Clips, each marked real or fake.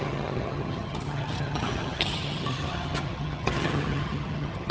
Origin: fake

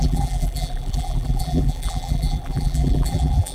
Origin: fake